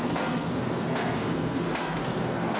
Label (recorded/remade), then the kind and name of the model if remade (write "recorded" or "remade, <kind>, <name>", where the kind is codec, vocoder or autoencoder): remade, codec, SNAC